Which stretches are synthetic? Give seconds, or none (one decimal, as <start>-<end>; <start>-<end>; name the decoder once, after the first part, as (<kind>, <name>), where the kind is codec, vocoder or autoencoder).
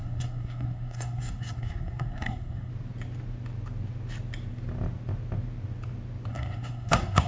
0.0-2.7 (codec, SNAC); 6.3-7.3